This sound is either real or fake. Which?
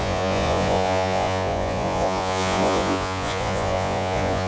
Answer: fake